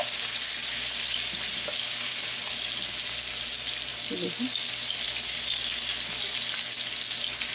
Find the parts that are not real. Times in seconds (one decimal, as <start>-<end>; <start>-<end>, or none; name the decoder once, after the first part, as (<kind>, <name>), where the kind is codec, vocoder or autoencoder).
none